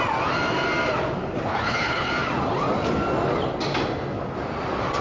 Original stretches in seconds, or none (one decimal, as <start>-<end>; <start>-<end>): 0.0-1.5; 2.1-5.0